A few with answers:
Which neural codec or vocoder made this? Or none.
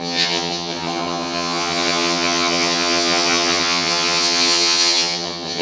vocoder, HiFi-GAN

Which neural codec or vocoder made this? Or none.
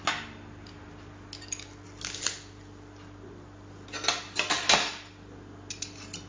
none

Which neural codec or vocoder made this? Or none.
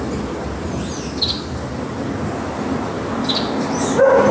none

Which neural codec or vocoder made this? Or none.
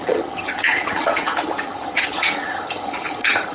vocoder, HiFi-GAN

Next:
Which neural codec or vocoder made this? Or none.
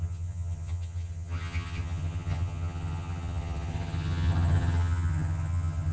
vocoder, HiFi-GAN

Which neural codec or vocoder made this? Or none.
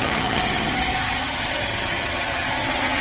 vocoder, HiFi-GAN